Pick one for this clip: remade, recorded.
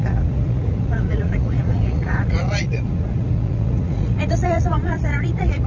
remade